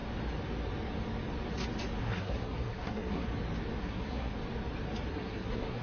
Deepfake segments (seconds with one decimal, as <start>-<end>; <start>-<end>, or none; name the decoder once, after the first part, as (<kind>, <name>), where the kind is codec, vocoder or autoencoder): 2.0-3.3 (codec, SNAC); 3.8-4.3; 5.1-5.8